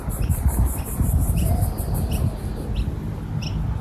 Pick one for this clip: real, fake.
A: real